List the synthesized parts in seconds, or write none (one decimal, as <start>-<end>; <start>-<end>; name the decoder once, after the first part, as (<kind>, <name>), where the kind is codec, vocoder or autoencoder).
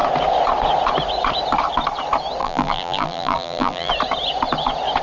2.4-3.9 (vocoder, BigVGAN v2)